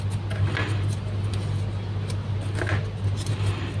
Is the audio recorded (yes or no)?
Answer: yes